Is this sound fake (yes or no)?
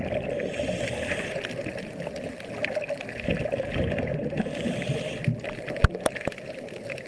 no